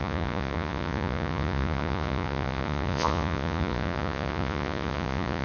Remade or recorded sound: remade